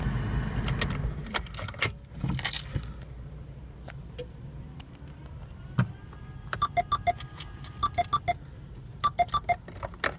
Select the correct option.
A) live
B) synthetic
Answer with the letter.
A